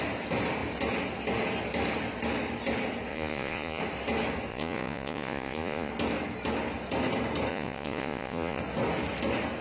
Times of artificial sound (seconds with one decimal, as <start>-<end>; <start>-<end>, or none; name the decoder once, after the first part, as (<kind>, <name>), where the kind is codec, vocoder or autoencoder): 3.1-3.8 (vocoder, Vocos); 4.5-5.9; 7.5-8.6